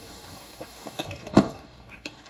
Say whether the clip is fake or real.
fake